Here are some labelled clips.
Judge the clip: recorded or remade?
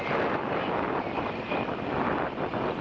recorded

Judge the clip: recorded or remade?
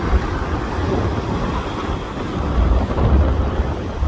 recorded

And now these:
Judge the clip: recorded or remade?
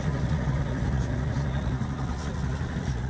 remade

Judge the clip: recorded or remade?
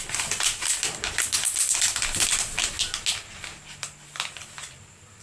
recorded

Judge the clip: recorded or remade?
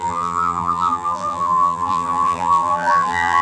remade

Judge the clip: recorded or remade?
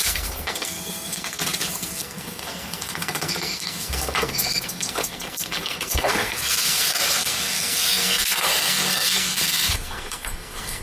remade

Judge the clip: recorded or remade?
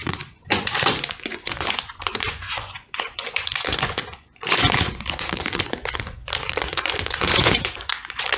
remade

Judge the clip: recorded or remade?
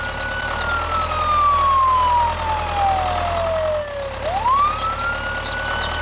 recorded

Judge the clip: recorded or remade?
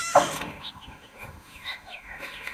remade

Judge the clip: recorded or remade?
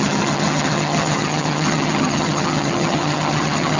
remade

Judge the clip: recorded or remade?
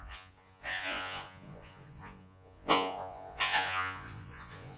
remade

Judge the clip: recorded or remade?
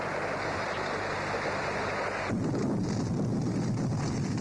recorded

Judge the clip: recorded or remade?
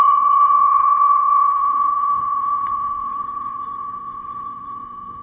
remade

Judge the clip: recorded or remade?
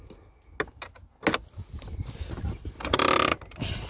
recorded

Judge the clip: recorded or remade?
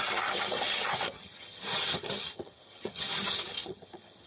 remade